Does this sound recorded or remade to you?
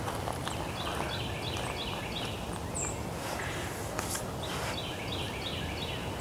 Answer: recorded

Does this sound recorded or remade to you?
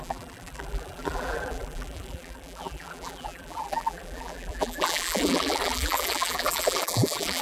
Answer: remade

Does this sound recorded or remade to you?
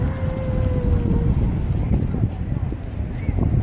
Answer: recorded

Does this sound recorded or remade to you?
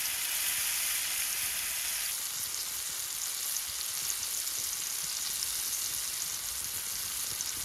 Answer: recorded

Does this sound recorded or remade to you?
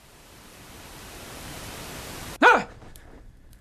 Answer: remade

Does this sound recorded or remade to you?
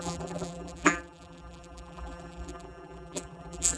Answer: remade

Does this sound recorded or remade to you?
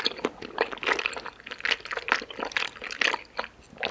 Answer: recorded